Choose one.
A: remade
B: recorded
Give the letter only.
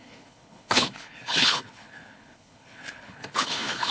A